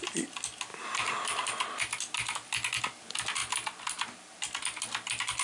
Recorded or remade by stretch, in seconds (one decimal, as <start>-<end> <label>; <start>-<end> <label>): 0.0-0.7 recorded; 0.7-2.8 remade; 2.8-5.4 recorded